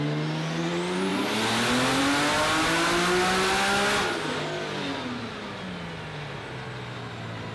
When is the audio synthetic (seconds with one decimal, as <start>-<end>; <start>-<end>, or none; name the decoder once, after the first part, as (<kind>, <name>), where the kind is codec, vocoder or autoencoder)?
none